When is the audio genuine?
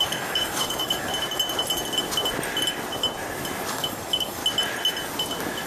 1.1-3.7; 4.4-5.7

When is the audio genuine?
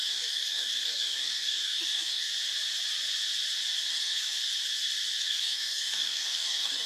2.3-3.9; 4.4-5.2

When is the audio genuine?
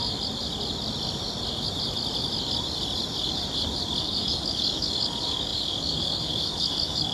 0.0-4.0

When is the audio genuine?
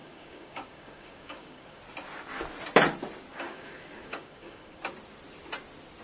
1.8-3.3; 4.8-6.0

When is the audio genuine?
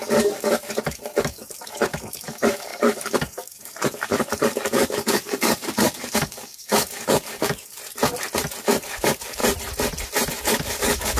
7.8-8.6; 9.4-10.3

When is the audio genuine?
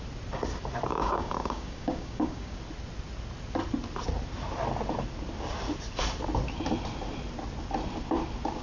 0.0-0.9; 2.6-8.6